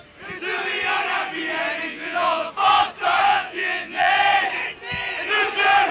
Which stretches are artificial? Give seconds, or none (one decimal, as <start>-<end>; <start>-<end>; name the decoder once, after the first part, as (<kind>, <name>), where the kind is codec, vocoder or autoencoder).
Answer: 1.9-2.5 (vocoder, Vocos); 3.3-4.1